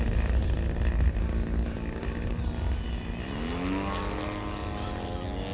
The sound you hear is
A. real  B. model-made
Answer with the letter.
A